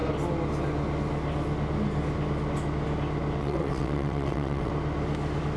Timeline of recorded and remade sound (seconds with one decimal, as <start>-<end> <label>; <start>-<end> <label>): 0.0-3.4 recorded; 3.4-4.7 remade; 4.7-5.6 recorded